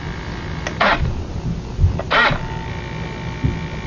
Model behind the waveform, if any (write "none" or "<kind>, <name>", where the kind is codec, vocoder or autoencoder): none